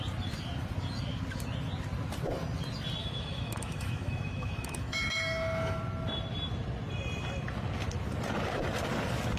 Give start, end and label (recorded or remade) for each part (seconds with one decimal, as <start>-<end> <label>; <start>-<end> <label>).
0.0-3.0 recorded; 3.0-5.8 remade; 5.8-9.4 recorded